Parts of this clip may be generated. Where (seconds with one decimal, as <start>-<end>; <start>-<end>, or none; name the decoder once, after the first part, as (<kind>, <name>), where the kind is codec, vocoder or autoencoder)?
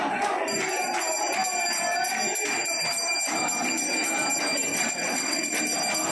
4.7-5.6 (vocoder, WaveNeXt)